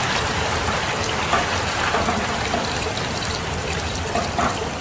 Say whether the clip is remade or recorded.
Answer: remade